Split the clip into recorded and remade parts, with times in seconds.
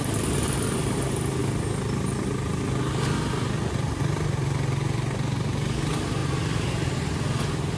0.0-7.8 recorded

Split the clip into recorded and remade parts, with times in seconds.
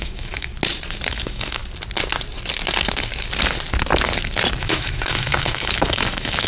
0.0-0.5 remade; 0.5-1.1 recorded; 1.1-1.6 remade; 1.6-4.6 recorded; 4.6-6.5 remade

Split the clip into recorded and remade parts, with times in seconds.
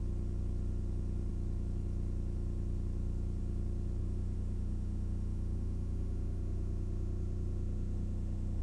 0.0-4.0 recorded; 4.0-8.6 remade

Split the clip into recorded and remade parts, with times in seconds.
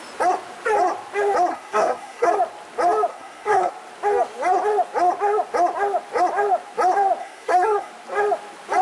0.0-1.5 recorded; 1.5-2.3 remade; 2.3-3.1 recorded; 3.1-3.7 remade; 3.7-7.2 recorded; 7.2-7.9 remade; 7.9-8.8 recorded